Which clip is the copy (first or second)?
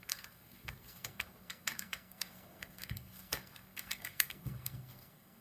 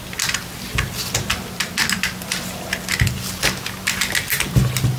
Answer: first